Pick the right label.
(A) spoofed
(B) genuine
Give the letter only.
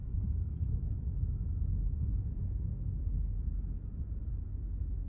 B